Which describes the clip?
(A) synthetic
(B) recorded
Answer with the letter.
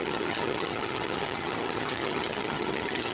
A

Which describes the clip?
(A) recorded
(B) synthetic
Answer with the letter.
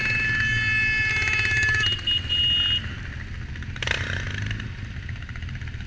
A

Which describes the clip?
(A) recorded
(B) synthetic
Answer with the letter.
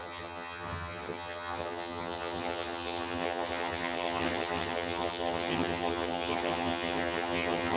B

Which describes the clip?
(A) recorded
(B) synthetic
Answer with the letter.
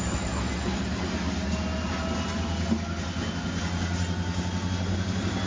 A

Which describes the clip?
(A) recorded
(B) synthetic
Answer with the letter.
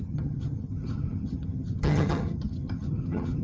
B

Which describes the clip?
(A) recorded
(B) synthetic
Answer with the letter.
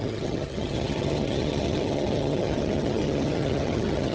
B